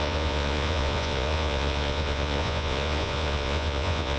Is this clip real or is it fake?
fake